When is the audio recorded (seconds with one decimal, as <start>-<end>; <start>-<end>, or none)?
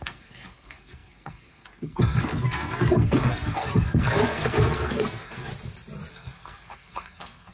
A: 5.5-6.1